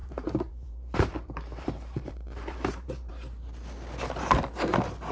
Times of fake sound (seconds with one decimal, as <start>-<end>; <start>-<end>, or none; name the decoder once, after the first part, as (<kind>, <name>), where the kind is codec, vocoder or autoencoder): 0.0-3.1 (vocoder, BigVGAN v2)

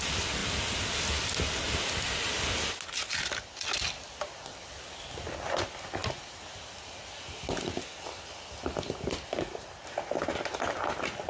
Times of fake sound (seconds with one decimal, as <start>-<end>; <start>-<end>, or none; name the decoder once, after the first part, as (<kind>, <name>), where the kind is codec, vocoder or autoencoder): none

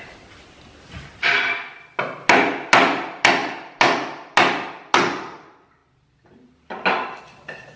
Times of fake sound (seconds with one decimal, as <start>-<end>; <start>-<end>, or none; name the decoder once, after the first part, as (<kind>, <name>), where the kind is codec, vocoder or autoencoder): none

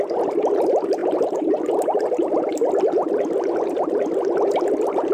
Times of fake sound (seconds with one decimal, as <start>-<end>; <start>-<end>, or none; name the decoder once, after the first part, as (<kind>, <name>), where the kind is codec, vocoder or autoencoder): 1.0-1.5 (vocoder, BigVGAN v2)

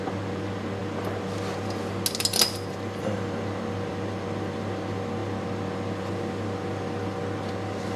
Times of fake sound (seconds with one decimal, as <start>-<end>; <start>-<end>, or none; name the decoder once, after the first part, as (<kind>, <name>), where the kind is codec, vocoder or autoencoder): none

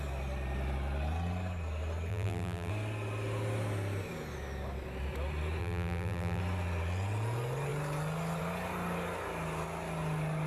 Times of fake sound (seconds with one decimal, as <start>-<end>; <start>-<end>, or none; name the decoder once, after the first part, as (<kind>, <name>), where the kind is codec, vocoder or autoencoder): 2.1-2.7 (vocoder, BigVGAN v2); 5.6-6.4